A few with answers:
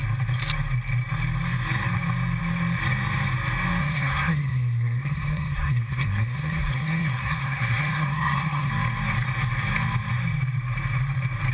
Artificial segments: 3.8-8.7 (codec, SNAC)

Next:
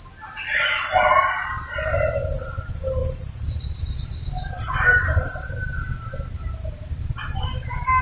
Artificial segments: 3.0-8.0 (vocoder, BigVGAN v2)

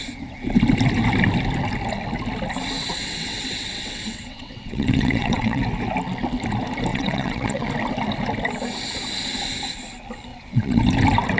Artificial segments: 2.8-5.6 (vocoder, WaveNeXt); 6.9-7.7; 10.3-10.8

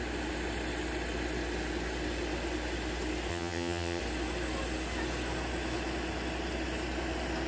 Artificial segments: 3.3-4.0 (vocoder, HiFi-GAN)

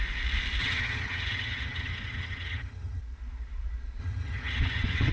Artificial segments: 0.6-3.0 (vocoder, HiFi-GAN); 4.0-5.1

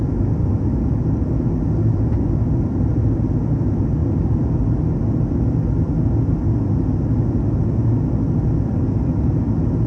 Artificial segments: none

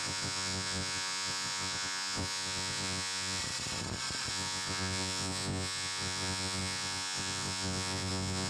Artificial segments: 0.0-3.4 (vocoder, Vocos); 4.3-8.5

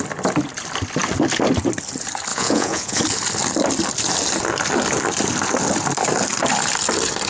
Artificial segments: 2.3-3.0 (vocoder, Vocos)